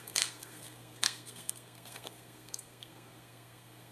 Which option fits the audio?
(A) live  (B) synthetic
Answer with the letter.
B